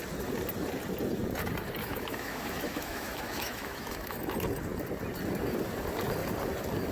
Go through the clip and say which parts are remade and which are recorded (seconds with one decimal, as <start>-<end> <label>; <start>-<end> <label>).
0.0-1.8 recorded; 1.8-4.2 remade; 4.2-6.9 recorded